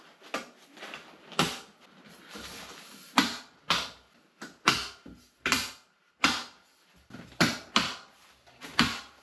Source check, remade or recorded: recorded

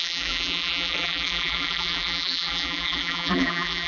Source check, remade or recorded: remade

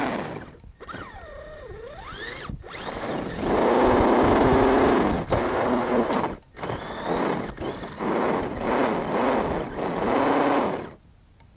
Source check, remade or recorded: recorded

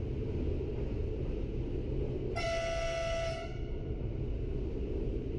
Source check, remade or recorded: recorded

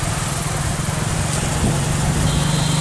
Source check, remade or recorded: recorded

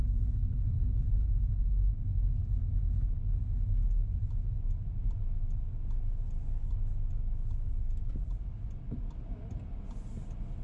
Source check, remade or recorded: recorded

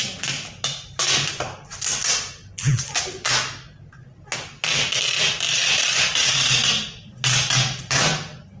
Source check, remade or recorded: recorded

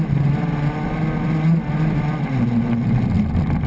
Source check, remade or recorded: recorded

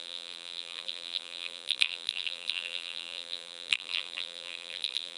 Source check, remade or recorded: remade